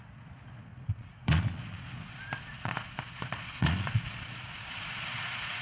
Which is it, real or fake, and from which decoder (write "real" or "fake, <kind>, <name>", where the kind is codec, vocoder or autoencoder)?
fake, vocoder, Vocos